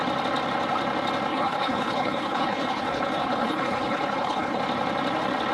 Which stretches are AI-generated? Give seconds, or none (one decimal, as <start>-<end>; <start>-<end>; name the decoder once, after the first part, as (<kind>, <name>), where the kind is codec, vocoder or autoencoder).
1.3-4.6 (codec, HILCodec)